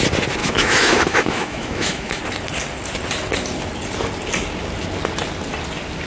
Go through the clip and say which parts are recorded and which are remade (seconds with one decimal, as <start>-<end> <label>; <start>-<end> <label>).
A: 0.0-0.4 recorded; 0.4-2.2 remade; 2.2-6.1 recorded